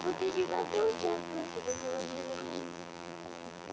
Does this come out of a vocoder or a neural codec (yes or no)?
yes